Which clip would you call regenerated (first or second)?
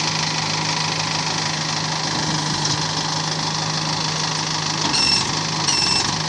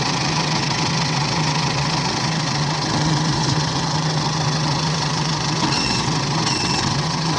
second